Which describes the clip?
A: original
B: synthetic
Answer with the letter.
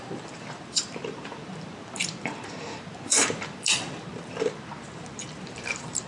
B